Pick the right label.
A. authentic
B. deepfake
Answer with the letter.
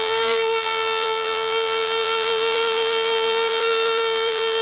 B